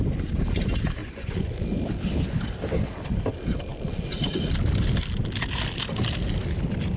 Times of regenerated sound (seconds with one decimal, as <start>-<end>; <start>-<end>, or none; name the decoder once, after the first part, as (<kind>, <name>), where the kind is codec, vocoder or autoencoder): 1.0-1.5 (vocoder, Vocos)